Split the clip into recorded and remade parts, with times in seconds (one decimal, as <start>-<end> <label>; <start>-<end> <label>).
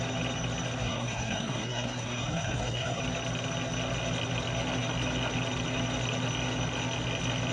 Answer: 0.0-0.8 recorded; 0.8-3.0 remade; 3.0-7.5 recorded